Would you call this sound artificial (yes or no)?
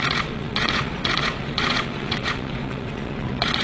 yes